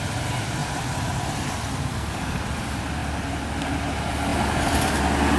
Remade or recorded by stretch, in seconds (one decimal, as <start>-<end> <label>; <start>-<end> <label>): 0.0-1.9 recorded; 1.9-2.4 remade; 2.4-5.4 recorded